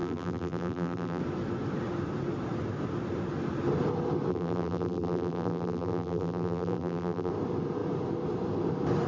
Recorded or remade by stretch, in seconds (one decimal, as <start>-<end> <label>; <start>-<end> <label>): 0.0-1.2 remade; 1.2-4.3 recorded; 4.3-7.3 remade; 7.3-9.1 recorded